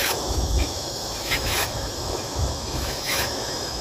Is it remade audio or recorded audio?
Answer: remade